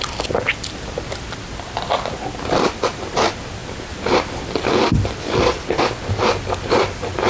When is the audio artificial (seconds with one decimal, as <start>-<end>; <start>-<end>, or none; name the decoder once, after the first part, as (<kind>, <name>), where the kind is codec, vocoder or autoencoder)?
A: none